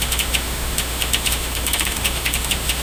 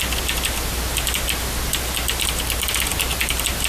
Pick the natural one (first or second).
second